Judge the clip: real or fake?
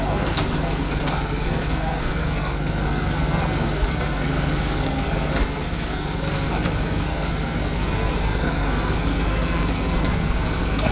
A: fake